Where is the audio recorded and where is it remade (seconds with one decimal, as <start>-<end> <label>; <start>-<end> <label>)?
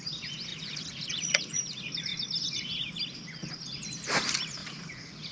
0.0-0.5 recorded; 0.5-1.6 remade; 1.6-4.6 recorded; 4.6-5.3 remade